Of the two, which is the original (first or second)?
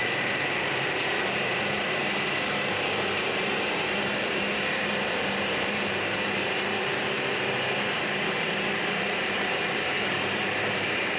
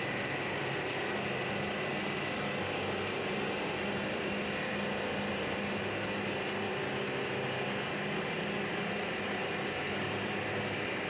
second